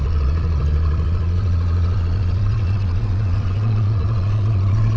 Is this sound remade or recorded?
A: remade